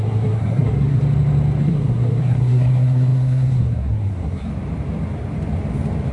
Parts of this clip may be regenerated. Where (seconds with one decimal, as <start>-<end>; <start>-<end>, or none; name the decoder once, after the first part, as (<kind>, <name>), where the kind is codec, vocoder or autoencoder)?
0.0-1.0 (codec, SNAC); 1.6-4.5